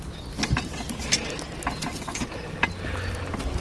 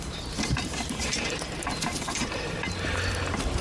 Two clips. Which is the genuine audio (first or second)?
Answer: first